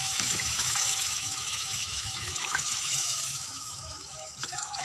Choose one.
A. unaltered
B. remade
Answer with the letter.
B